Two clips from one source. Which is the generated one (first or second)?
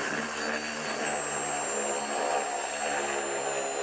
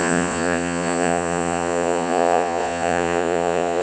second